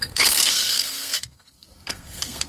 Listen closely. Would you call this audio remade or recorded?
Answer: remade